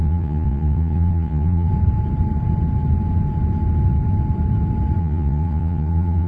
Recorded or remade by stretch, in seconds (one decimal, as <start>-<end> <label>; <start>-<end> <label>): 0.0-1.7 remade; 1.7-5.0 recorded; 5.0-6.3 remade